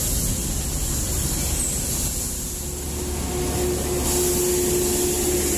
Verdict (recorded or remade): recorded